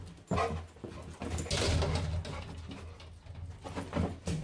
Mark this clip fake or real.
real